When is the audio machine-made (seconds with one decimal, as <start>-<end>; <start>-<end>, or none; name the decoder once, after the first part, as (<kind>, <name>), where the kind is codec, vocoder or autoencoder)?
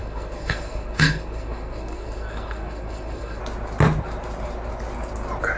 0.0-3.4 (codec, SNAC)